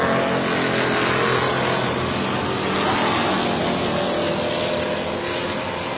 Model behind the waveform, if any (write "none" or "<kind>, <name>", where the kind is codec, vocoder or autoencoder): none